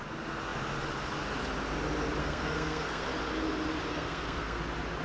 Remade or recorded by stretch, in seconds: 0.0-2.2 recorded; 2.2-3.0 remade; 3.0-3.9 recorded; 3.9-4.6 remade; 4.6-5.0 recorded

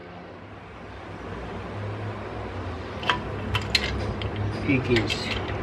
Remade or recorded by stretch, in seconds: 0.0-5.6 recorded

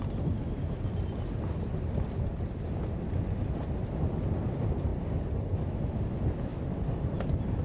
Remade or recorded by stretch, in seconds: 0.0-4.9 remade; 4.9-6.1 recorded; 6.1-6.5 remade; 6.5-7.0 recorded; 7.0-7.6 remade